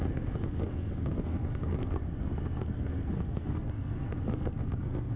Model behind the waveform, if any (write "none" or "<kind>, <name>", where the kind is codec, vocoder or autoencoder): codec, SNAC